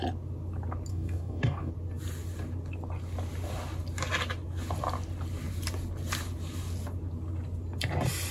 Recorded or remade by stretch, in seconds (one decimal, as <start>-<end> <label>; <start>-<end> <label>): 0.0-0.9 recorded; 0.9-1.7 remade; 1.7-8.3 recorded